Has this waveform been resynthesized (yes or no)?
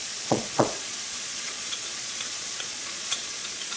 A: yes